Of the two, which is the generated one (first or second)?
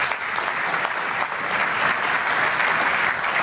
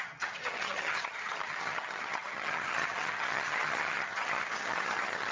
second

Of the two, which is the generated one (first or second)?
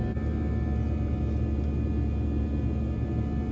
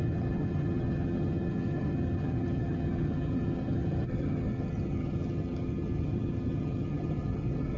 second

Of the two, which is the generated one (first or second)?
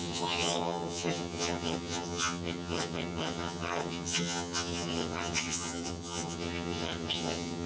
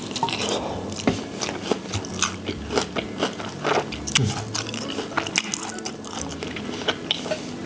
first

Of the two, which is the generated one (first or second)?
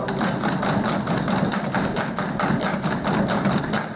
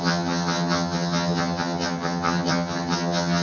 second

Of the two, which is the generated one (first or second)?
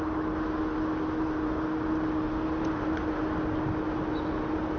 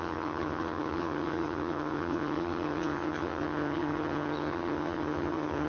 second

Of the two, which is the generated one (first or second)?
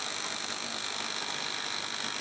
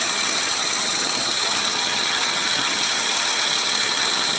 second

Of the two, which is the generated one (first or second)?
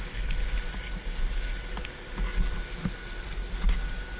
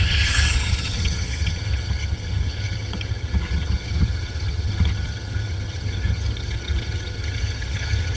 second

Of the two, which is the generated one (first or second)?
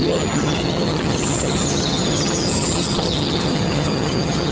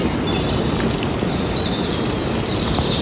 first